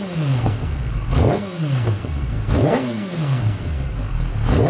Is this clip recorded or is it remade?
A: remade